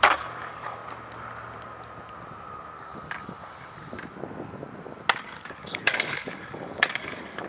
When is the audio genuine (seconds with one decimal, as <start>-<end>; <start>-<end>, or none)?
0.8-5.2